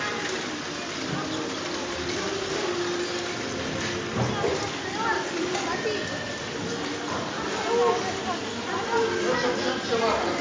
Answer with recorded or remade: recorded